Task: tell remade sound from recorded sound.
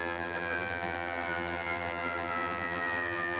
remade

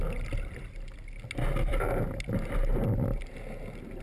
recorded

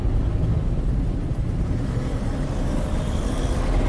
remade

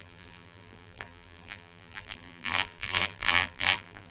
remade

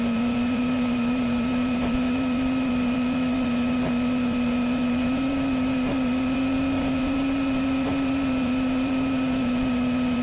remade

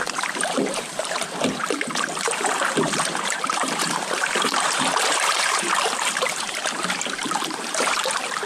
remade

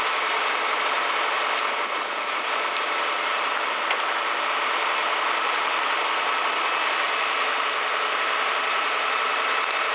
remade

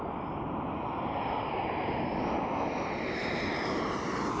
recorded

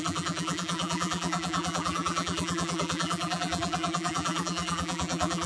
remade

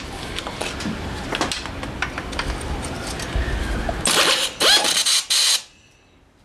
recorded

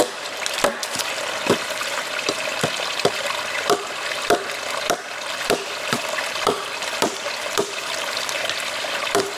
remade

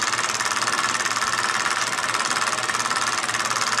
recorded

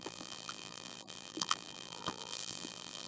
remade